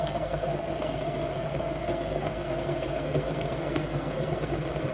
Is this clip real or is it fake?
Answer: fake